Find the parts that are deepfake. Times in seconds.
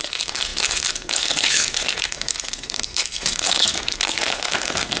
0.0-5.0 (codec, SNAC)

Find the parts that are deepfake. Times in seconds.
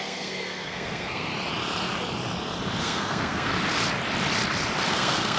0.0-1.3 (codec, SNAC); 2.8-3.5; 4.9-5.4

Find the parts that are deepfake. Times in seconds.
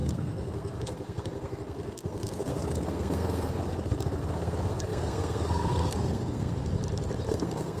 0.0-6.7 (codec, SNAC); 7.3-7.8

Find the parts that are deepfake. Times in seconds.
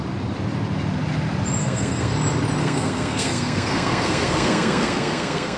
1.6-2.1 (codec, SNAC); 2.6-5.6